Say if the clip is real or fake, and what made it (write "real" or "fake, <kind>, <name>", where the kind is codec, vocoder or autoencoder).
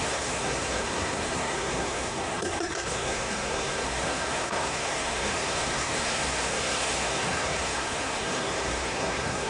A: fake, codec, SNAC